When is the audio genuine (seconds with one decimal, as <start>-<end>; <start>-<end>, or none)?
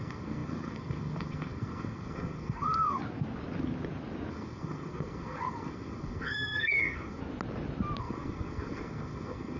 3.0-4.3; 7.2-8.0